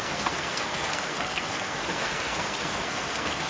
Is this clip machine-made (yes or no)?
yes